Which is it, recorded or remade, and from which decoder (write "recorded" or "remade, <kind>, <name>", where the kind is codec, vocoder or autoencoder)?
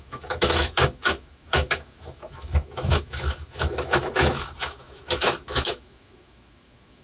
remade, autoencoder, DAC-VAE